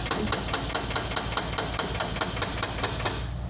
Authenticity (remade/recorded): recorded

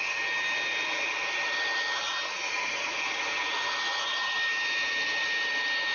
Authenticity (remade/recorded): recorded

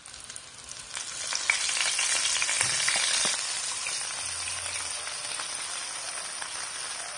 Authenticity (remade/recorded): recorded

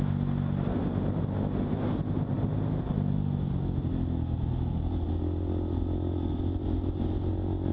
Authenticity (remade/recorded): recorded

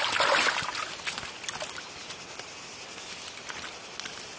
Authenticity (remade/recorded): recorded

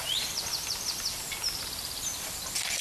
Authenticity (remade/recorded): remade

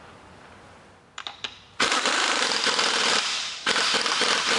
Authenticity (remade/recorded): remade